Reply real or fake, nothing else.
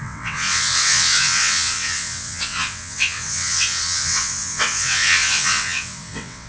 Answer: fake